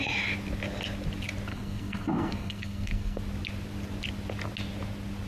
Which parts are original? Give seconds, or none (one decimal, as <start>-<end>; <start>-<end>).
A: 0.0-1.5; 3.2-5.3